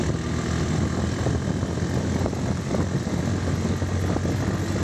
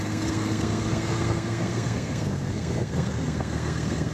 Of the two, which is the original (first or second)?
first